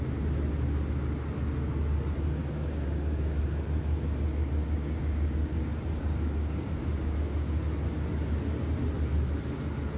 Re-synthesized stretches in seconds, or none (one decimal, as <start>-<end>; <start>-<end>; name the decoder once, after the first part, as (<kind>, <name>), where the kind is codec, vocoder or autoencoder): 2.4-3.4 (codec, DAC); 4.8-7.5